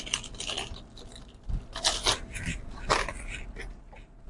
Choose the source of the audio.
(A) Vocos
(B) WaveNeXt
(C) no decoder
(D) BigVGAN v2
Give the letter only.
D